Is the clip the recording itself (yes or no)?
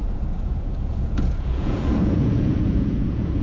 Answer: no